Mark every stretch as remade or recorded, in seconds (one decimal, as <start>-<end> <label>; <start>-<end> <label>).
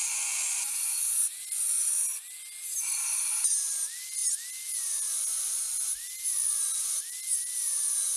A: 0.0-8.2 recorded